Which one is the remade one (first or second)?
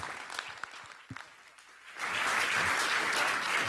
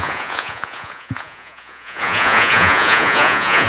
second